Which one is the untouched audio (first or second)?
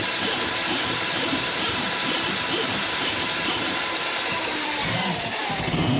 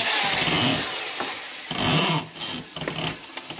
second